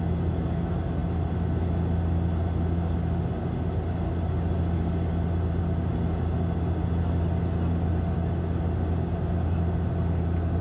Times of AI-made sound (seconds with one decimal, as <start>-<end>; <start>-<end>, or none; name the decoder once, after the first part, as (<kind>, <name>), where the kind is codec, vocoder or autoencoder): none